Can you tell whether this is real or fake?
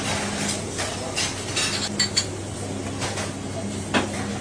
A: real